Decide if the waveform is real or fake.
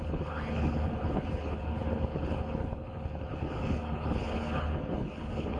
fake